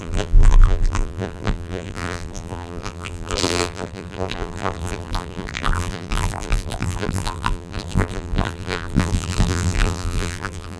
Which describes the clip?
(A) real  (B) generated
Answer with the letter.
B